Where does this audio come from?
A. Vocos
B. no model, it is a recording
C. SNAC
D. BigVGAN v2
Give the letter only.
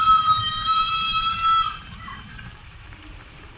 D